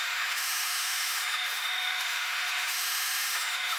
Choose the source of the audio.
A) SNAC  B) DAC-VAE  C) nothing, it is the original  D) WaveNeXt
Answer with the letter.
B